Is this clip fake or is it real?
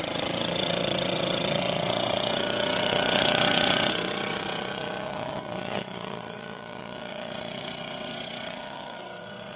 fake